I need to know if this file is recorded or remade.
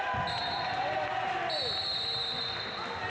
recorded